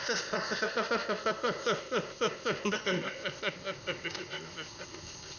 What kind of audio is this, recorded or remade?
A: remade